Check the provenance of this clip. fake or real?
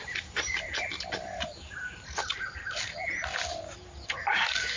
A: real